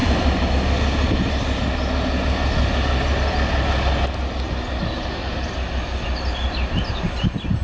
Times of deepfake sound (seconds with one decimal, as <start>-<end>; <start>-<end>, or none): 0.0-0.5; 5.2-6.0